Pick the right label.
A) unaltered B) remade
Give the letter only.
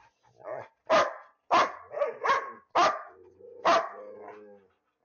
A